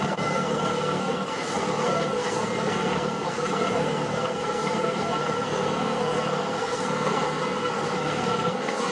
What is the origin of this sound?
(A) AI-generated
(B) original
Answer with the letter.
A